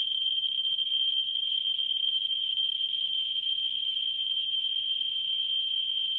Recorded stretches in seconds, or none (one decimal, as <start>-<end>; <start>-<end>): 0.0-1.3; 5.0-6.2